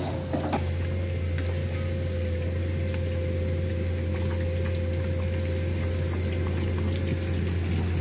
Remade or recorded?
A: recorded